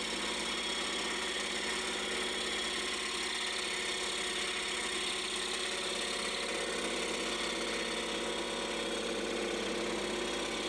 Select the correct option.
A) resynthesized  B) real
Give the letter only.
B